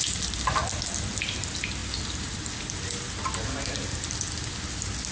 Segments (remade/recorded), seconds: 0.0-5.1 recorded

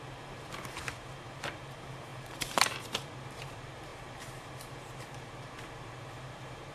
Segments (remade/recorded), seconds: 0.0-6.7 remade

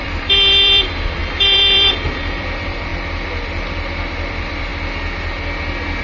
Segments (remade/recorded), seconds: 0.0-2.9 remade; 2.9-4.3 recorded; 4.3-4.7 remade; 4.7-6.0 recorded

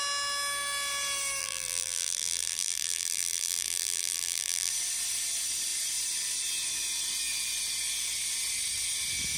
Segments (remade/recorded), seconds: 0.0-1.4 recorded; 1.4-4.7 remade; 4.7-9.4 recorded

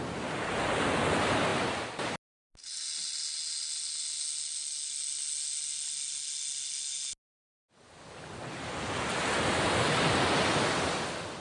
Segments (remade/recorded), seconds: 0.0-11.4 recorded